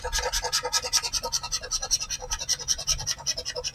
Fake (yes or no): no